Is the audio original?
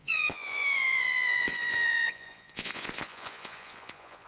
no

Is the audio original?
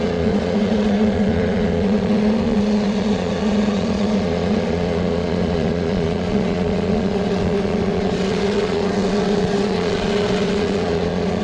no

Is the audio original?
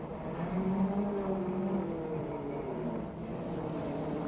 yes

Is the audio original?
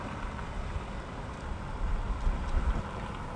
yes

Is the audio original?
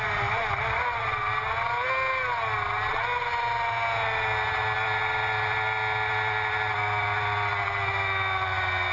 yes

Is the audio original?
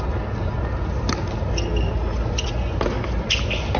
yes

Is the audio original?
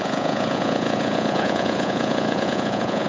no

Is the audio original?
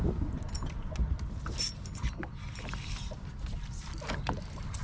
yes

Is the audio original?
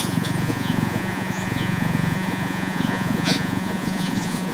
no